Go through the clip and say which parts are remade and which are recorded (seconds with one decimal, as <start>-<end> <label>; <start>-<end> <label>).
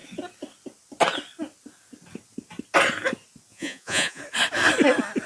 0.0-3.5 recorded; 3.5-4.2 remade; 4.2-5.3 recorded